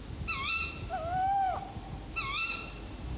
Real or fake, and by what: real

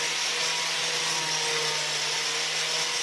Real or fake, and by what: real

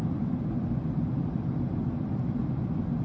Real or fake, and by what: real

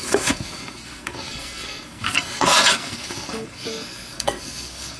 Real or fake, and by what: fake, codec, SNAC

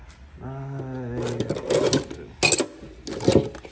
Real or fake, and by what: real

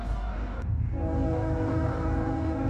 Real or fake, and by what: fake, codec, DAC